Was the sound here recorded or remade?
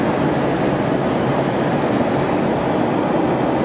recorded